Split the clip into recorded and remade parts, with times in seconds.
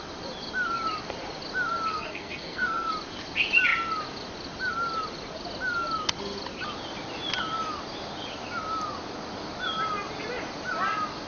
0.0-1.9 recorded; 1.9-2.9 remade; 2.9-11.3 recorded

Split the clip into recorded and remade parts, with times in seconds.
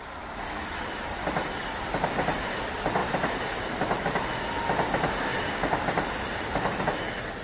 0.0-3.0 recorded; 3.0-4.4 remade; 4.4-5.3 recorded; 5.3-6.8 remade; 6.8-7.4 recorded